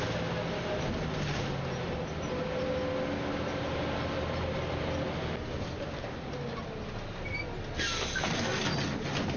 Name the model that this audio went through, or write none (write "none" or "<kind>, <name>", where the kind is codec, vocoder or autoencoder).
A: none